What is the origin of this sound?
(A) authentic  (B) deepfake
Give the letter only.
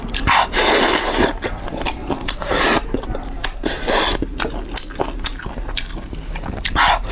A